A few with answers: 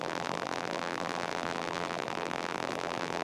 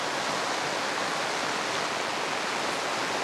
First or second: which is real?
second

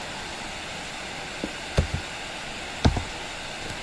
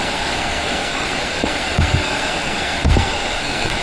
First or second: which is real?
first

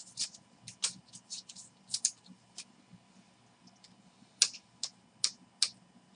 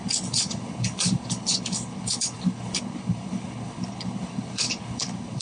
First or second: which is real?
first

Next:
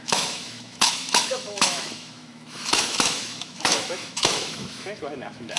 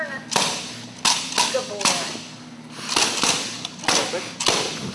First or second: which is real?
second